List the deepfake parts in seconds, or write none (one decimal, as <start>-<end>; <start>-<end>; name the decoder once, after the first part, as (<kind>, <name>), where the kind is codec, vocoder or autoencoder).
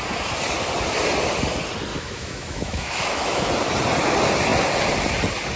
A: 1.9-3.5 (autoencoder, DAC-VAE)